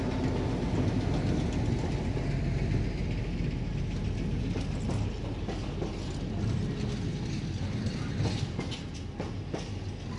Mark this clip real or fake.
real